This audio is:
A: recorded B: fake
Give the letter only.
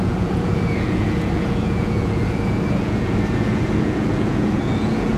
B